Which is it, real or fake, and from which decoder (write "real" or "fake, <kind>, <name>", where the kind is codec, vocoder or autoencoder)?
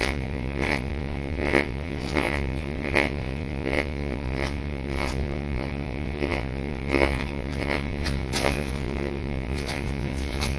fake, vocoder, WaveNeXt